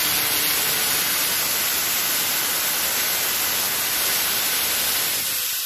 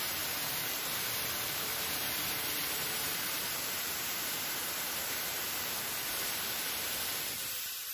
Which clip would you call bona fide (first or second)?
first